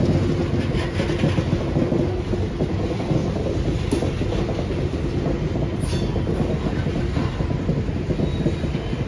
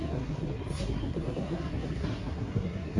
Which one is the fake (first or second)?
second